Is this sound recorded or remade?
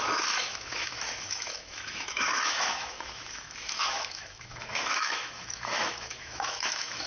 remade